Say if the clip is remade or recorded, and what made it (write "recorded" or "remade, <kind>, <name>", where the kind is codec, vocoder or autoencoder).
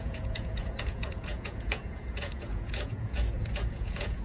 remade, vocoder, Vocos